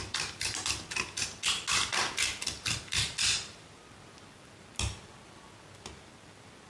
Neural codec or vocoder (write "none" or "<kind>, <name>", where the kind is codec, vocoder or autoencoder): none